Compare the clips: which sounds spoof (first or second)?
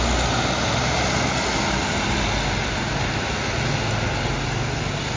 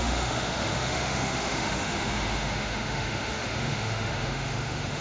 second